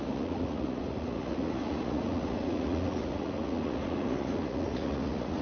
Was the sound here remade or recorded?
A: remade